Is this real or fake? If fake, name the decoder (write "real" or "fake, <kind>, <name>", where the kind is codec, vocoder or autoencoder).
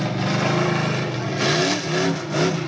real